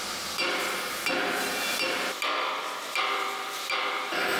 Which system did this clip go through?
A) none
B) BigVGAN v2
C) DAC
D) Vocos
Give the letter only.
B